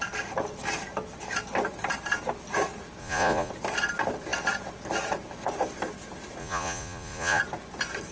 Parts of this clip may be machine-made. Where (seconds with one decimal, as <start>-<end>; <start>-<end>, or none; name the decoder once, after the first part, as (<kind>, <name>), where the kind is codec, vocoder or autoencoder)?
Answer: 3.0-3.5 (vocoder, Vocos); 6.4-7.4